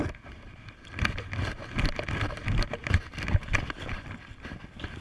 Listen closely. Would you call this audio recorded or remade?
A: recorded